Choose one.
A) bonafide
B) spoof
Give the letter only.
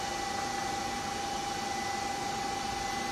A